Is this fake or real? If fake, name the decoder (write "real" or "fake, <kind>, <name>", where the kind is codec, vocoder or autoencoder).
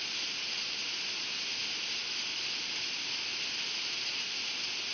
real